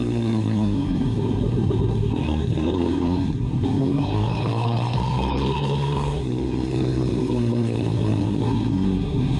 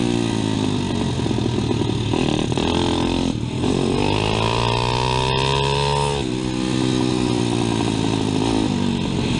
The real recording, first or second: second